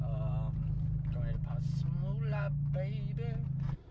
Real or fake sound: real